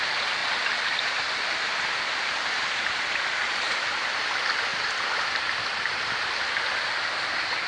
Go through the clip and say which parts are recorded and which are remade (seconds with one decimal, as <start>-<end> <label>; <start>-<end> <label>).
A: 0.0-0.4 recorded; 0.4-4.1 remade; 4.1-4.7 recorded; 4.7-5.7 remade; 5.7-7.7 recorded